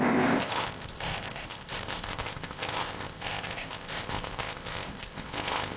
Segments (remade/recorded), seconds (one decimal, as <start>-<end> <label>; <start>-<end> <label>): 0.0-5.8 remade